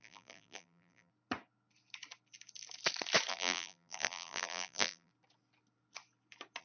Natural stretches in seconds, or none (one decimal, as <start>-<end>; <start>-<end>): 1.1-3.3; 5.1-6.6